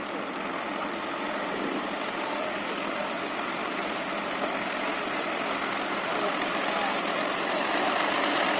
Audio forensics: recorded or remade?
recorded